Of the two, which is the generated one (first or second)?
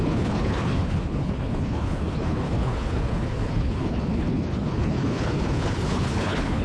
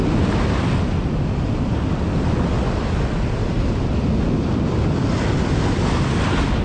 first